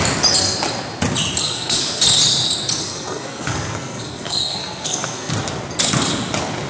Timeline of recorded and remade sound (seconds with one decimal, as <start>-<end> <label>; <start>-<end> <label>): 0.0-1.4 recorded; 1.4-2.0 remade; 2.0-2.8 recorded; 2.8-5.3 remade; 5.3-6.7 recorded